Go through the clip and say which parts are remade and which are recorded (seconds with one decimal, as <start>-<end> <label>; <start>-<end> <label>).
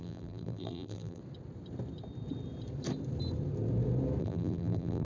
0.0-1.2 remade; 1.2-4.2 recorded; 4.2-5.0 remade